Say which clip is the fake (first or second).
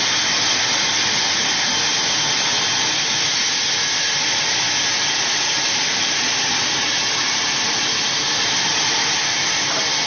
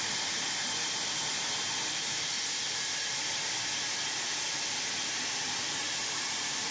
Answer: second